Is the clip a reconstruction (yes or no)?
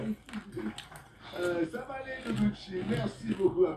no